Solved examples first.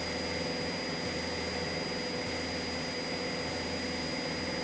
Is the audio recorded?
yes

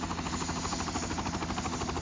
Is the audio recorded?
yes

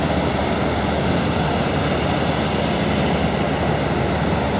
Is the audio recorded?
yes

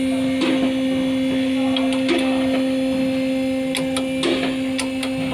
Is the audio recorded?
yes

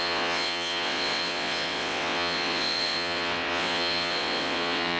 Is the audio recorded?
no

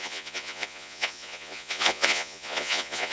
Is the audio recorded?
no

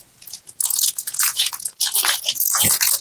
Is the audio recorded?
no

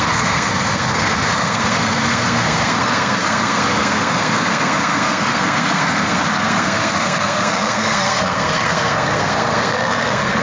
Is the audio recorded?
no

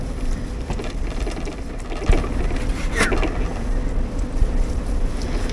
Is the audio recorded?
yes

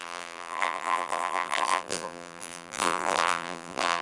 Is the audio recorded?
no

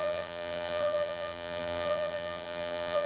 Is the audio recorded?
no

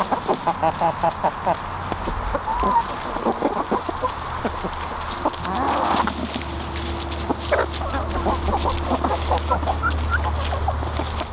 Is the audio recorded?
yes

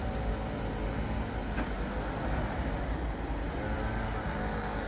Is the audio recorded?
yes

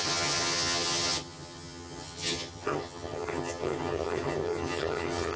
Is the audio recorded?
no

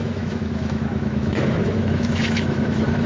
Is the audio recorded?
no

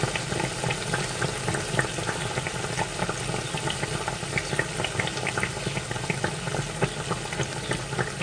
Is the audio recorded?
yes